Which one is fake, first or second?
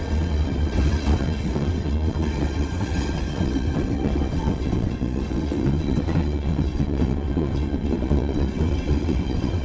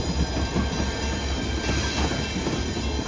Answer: first